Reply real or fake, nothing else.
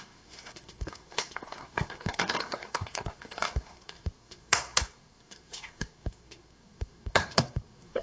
fake